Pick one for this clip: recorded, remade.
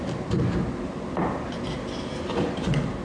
recorded